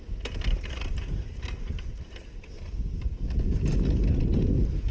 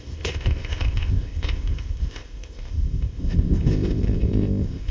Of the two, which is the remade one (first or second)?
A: second